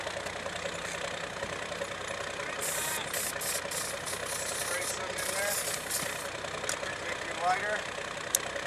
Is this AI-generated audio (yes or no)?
no